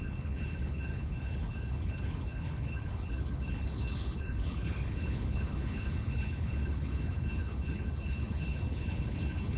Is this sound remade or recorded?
remade